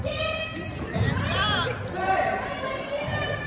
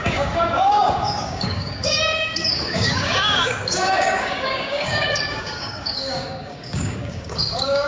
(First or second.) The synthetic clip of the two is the second